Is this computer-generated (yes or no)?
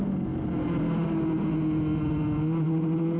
no